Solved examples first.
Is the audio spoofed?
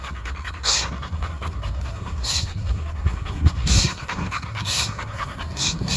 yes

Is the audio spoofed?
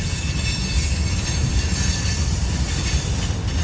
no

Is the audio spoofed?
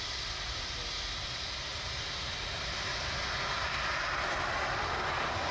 no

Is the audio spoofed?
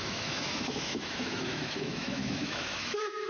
yes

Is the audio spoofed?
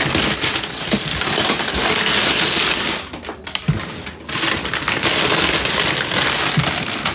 no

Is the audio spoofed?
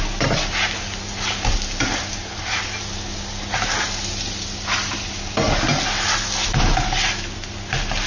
no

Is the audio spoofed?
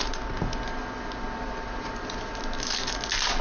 no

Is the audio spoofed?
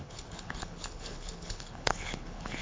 yes